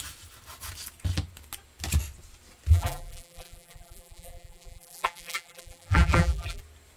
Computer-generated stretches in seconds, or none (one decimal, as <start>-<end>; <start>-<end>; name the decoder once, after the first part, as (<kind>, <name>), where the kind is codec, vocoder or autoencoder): 2.7-6.6 (vocoder, BigVGAN v2)